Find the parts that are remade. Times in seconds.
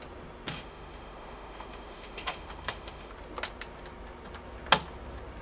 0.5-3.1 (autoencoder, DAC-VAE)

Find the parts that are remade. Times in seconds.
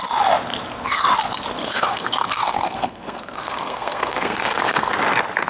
1.6-4.9 (codec, SNAC)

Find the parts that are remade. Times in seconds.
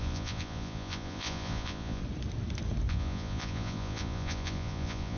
0.0-2.0 (vocoder, Vocos); 2.9-5.2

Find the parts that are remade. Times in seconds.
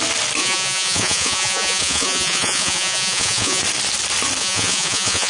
0.4-3.6 (vocoder, Vocos); 4.4-5.3